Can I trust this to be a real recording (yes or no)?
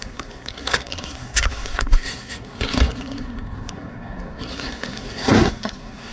no